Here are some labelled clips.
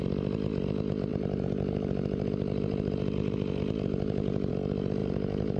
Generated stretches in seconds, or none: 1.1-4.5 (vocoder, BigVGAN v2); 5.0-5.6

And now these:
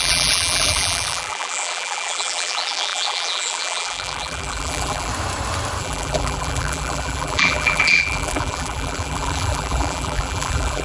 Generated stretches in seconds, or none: 0.0-5.1 (vocoder, BigVGAN v2); 5.8-10.8

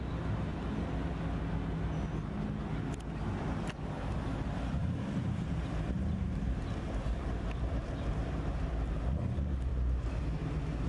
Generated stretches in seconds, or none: 4.8-8.7 (vocoder, BigVGAN v2)